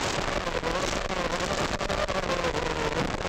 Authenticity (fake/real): real